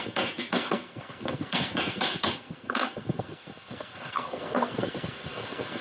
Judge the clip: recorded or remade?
remade